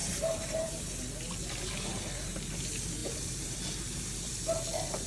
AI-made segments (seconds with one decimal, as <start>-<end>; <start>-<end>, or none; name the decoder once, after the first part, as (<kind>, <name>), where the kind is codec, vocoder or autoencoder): 0.0-0.8 (vocoder, BigVGAN v2); 1.4-2.5; 3.0-4.3